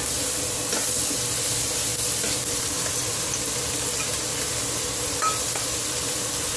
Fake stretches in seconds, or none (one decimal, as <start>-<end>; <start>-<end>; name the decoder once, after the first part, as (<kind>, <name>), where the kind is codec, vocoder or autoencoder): none